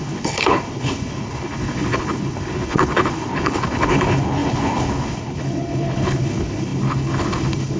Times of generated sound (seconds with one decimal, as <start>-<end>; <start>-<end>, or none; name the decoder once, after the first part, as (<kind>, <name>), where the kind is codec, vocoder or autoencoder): 0.0-7.8 (codec, HILCodec)